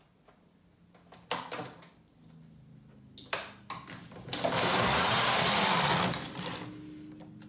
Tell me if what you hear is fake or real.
real